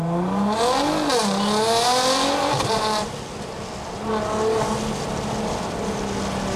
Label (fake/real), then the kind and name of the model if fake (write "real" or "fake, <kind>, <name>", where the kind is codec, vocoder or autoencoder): real